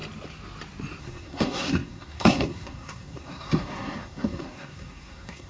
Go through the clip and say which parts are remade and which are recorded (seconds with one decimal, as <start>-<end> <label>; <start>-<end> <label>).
0.0-1.0 recorded; 1.0-5.5 remade